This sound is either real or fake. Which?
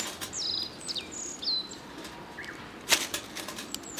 real